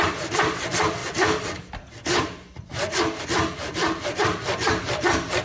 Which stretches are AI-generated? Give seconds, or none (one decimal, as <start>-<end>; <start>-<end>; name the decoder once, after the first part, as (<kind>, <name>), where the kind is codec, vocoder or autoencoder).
none